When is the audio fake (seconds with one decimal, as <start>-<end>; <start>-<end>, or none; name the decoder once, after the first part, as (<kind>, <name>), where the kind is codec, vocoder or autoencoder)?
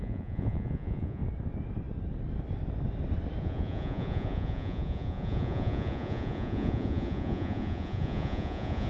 0.0-1.2 (vocoder, Vocos); 3.4-8.9